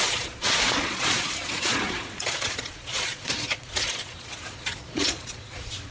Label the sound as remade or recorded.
remade